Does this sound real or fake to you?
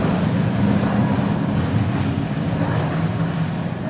real